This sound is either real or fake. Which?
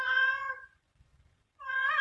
fake